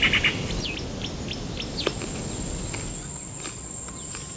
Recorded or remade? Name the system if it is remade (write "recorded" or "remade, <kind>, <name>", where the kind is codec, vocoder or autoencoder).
recorded